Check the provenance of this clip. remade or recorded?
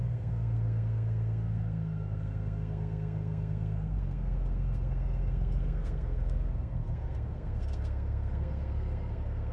remade